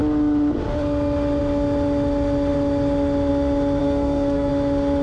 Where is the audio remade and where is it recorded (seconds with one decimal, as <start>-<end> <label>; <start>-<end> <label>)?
0.0-3.8 recorded; 3.8-4.5 remade; 4.5-5.0 recorded